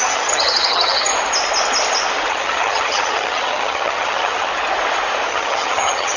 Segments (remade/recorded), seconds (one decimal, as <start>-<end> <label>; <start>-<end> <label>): 0.0-1.1 remade; 1.1-2.3 recorded; 2.3-4.5 remade; 4.5-5.3 recorded; 5.3-6.2 remade